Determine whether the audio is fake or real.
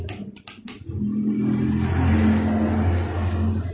real